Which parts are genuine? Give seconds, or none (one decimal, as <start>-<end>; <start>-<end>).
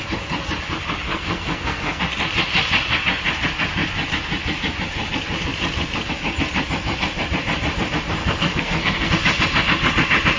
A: 0.0-1.1; 2.0-8.2; 9.1-10.4